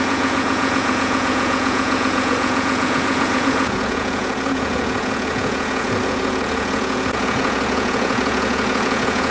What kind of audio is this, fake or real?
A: fake